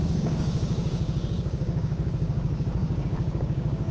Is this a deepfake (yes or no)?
yes